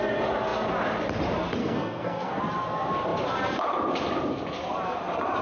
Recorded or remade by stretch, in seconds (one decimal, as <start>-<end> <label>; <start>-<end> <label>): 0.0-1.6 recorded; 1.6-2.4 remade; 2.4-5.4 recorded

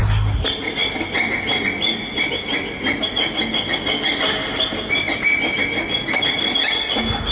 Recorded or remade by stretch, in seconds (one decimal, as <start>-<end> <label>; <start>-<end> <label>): 0.0-7.3 recorded

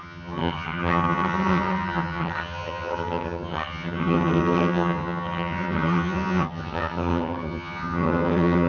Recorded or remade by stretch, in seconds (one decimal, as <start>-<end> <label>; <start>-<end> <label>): 0.0-8.7 remade

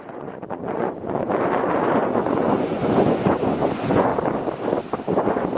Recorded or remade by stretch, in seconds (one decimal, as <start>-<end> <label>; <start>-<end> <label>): 0.0-4.1 remade; 4.1-5.1 recorded; 5.1-5.6 remade